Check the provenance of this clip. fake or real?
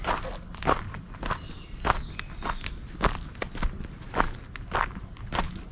real